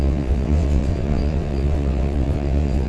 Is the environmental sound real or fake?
fake